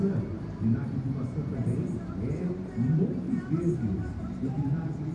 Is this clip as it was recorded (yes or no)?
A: no